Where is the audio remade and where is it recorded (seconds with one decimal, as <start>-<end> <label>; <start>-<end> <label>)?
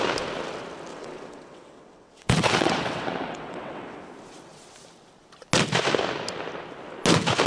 0.0-0.9 recorded; 0.9-4.0 remade; 4.0-7.5 recorded